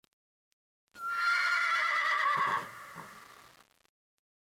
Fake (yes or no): no